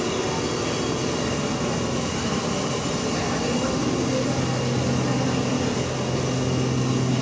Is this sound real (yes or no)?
yes